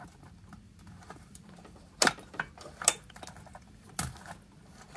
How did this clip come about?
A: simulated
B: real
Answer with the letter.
B